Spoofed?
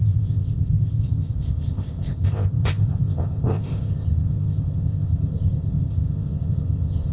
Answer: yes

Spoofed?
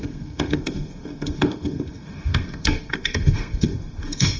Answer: yes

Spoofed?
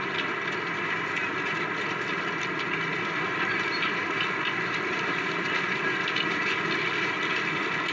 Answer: no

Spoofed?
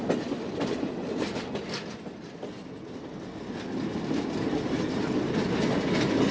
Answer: no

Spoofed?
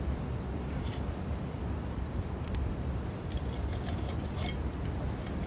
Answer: yes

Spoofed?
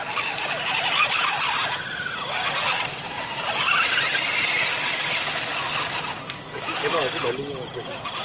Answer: no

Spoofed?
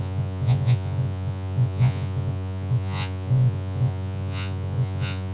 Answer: yes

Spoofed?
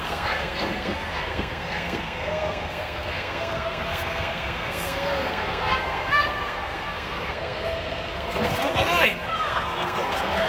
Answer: yes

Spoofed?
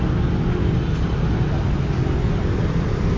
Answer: no